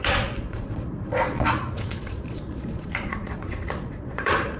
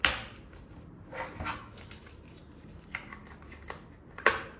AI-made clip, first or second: first